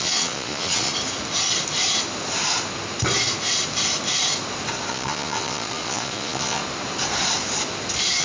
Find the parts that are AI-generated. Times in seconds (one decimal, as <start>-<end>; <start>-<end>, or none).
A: 0.0-0.9; 4.9-6.6